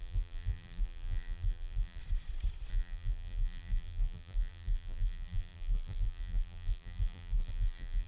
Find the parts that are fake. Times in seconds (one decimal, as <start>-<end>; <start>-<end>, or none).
0.0-2.0; 2.7-8.1